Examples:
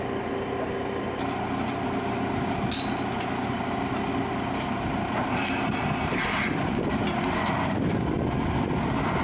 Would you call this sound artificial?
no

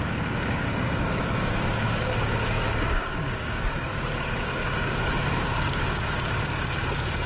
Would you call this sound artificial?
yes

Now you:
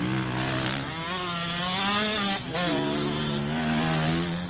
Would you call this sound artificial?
no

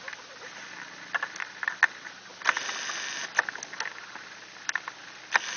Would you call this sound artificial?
no